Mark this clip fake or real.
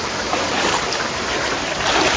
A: real